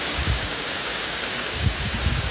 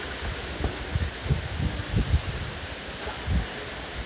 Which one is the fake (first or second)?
first